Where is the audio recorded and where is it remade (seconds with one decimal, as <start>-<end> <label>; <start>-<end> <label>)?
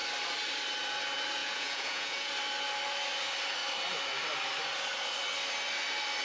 0.0-1.4 recorded; 1.4-2.3 remade; 2.3-6.2 recorded